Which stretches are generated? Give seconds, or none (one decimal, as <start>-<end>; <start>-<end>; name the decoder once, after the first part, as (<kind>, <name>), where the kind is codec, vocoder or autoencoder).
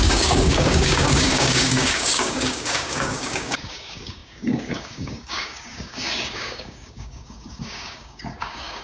0.0-8.8 (codec, DAC)